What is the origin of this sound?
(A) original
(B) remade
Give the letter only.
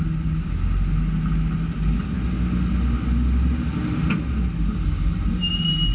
A